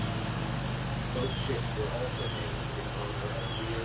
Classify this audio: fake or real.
real